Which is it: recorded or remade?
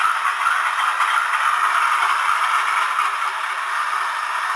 recorded